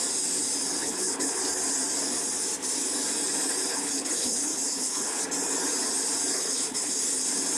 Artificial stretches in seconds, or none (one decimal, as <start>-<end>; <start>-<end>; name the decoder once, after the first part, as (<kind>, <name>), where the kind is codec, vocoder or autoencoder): 0.8-1.4 (codec, HILCodec); 3.7-5.2; 6.3-6.9